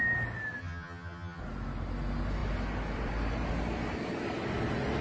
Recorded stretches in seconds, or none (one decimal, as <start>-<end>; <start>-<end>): 0.0-0.6; 1.4-5.0